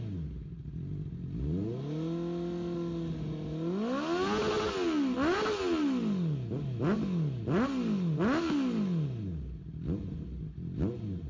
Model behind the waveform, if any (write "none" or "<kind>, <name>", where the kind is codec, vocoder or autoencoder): none